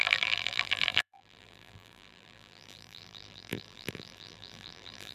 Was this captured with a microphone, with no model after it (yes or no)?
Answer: no